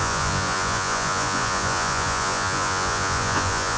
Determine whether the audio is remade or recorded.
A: remade